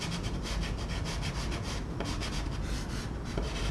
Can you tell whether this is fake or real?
fake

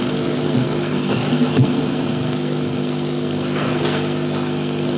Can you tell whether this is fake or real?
fake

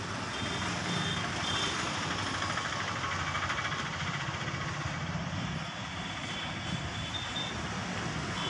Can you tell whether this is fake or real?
real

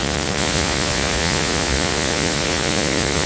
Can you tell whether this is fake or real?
fake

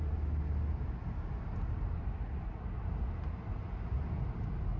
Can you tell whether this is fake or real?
real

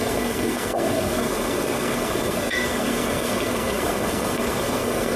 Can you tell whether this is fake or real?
fake